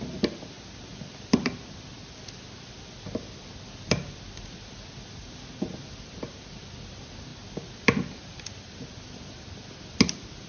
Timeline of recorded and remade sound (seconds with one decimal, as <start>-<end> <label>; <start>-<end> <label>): 0.0-10.5 recorded